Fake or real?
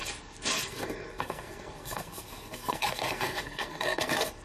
fake